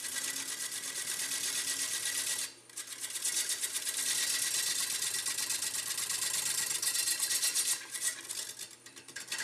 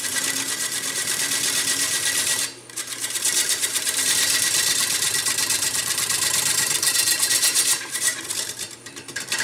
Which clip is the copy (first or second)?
second